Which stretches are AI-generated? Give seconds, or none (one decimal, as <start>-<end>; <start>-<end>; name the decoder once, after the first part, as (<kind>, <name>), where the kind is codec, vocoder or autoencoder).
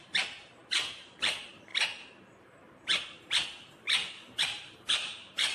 0.0-1.7 (vocoder, BigVGAN v2); 2.4-2.9; 3.8-5.5